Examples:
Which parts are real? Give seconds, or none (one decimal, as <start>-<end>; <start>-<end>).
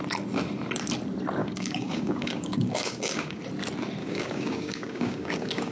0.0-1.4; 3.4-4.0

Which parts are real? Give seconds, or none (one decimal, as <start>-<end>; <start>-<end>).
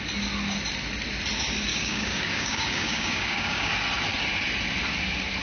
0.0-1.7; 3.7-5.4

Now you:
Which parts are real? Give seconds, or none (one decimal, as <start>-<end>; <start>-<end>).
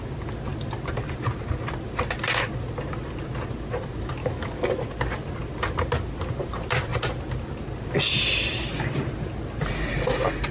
0.0-4.2; 4.7-10.5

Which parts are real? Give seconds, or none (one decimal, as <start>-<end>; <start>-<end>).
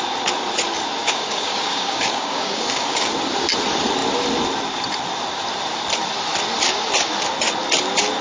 0.0-1.0; 3.1-8.2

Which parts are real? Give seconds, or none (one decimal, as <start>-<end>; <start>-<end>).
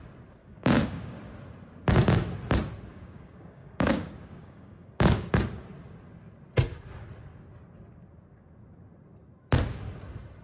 0.0-0.4; 1.2-2.9; 5.3-10.4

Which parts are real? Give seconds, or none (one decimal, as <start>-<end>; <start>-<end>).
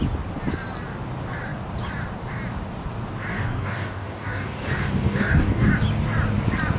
0.0-3.3; 5.7-6.8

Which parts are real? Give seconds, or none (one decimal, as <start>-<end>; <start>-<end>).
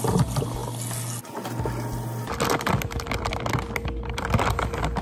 0.0-5.0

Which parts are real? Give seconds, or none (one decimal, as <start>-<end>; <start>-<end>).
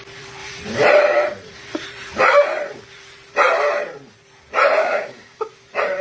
0.0-4.8; 5.5-6.0